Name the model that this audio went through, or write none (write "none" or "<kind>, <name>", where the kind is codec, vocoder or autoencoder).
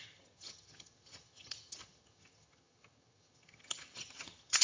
vocoder, HiFi-GAN